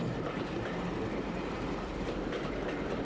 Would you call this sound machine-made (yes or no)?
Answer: yes